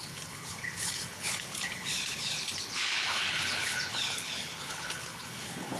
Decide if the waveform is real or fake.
fake